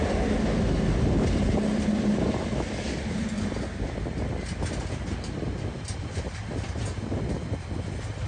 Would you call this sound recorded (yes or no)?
yes